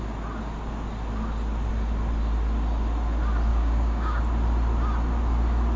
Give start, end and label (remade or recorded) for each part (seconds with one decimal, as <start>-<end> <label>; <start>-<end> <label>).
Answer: 0.0-3.5 recorded; 3.5-4.2 remade; 4.2-5.8 recorded